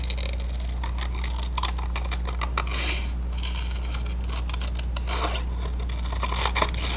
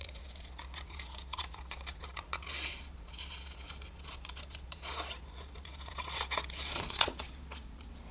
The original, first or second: first